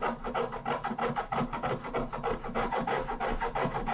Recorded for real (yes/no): yes